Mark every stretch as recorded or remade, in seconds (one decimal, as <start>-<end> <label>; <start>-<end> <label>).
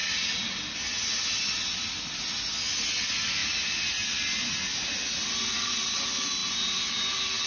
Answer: 0.0-7.5 recorded